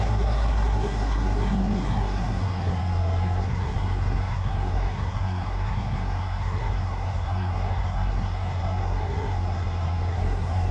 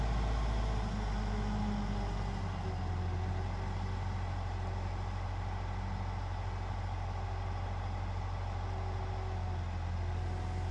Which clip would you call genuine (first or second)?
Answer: second